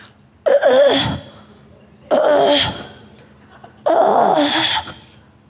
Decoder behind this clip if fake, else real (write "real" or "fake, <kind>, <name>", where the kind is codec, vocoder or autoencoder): real